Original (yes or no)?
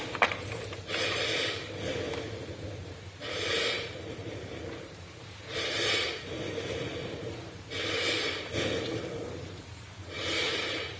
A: no